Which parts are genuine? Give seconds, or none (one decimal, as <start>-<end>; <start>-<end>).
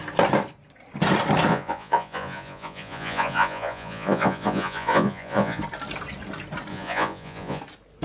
0.0-1.5; 5.6-6.7; 7.6-8.0